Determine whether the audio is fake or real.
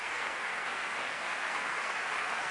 fake